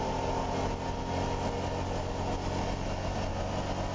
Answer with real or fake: real